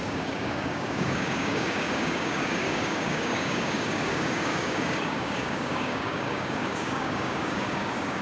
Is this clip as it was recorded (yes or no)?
no